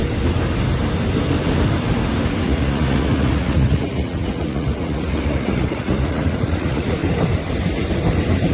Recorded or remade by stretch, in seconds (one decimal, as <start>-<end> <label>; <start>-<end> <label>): 0.0-2.4 recorded; 2.4-7.0 remade; 7.0-8.5 recorded